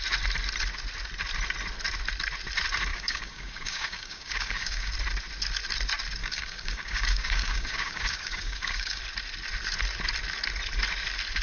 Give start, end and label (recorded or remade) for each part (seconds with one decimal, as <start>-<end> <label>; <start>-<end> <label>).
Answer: 0.0-2.9 recorded; 2.9-4.9 remade; 4.9-6.2 recorded; 6.2-9.0 remade; 9.0-11.4 recorded